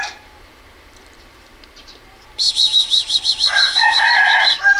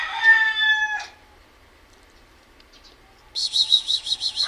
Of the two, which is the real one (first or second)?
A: second